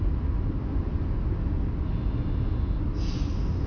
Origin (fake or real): real